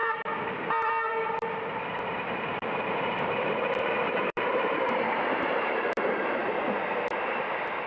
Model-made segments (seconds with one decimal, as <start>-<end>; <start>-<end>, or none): 1.3-6.4